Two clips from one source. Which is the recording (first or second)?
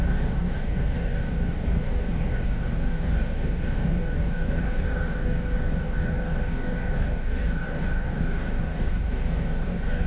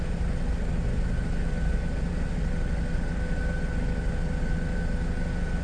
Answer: second